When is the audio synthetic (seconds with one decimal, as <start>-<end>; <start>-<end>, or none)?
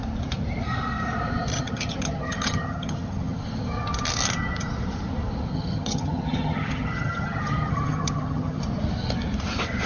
1.5-3.4; 5.5-8.6